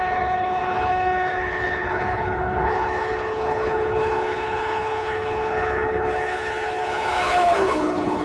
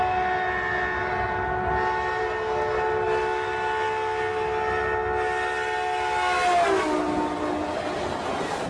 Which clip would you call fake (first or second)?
first